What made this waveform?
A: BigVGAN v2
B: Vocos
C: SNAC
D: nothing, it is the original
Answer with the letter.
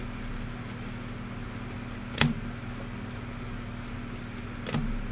D